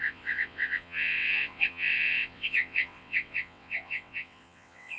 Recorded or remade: remade